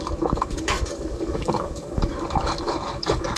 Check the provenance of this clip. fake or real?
fake